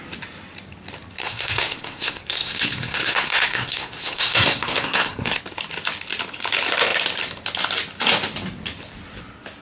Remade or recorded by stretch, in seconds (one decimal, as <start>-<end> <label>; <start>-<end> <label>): 0.0-1.2 recorded; 1.2-5.4 remade; 5.4-9.6 recorded